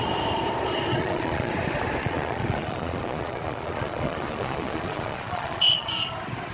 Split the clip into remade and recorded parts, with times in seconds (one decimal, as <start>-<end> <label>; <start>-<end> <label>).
0.0-0.9 recorded; 0.9-1.5 remade; 1.5-2.0 recorded; 2.0-5.9 remade; 5.9-6.5 recorded